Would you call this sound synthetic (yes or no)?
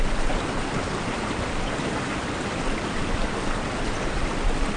yes